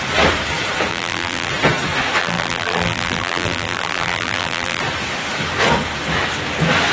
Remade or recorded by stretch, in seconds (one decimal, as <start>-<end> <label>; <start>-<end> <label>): 0.0-0.9 recorded; 0.9-1.5 remade; 1.5-2.2 recorded; 2.2-4.8 remade; 4.8-6.9 recorded